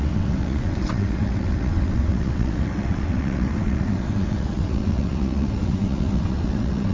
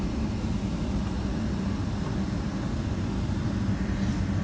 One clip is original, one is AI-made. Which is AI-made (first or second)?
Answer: first